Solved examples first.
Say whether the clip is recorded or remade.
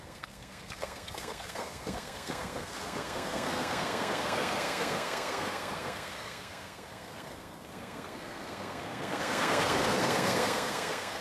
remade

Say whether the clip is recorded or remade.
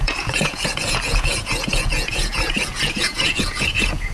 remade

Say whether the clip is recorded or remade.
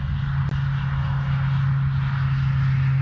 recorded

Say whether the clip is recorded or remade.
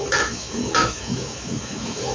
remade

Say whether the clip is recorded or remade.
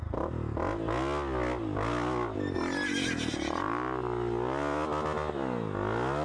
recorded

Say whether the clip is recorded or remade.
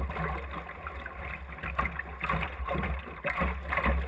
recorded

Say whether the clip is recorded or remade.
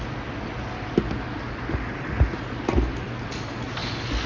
recorded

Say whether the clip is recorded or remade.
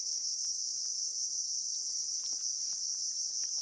recorded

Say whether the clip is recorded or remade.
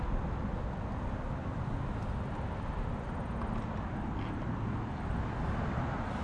recorded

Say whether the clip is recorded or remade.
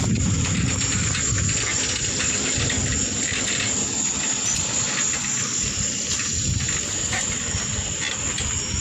remade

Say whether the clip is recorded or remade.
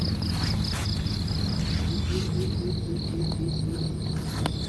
recorded